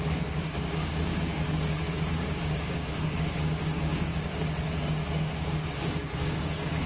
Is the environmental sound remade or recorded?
remade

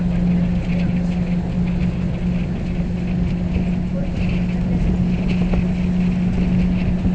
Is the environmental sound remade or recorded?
recorded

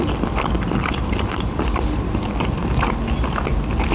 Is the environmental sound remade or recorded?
recorded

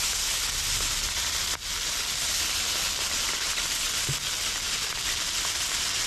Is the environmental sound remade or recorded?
recorded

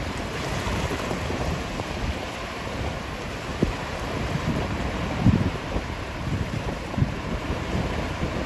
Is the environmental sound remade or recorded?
remade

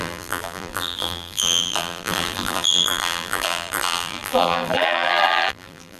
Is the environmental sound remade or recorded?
remade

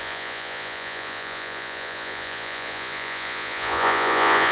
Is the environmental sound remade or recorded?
remade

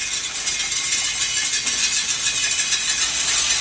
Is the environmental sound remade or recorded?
recorded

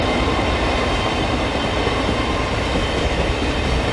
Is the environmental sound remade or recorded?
recorded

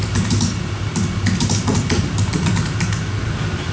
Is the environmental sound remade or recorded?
recorded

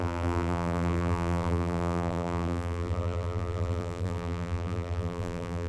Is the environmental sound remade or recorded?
remade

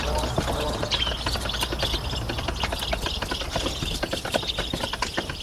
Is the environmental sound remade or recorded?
recorded